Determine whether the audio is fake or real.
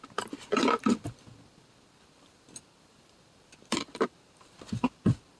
fake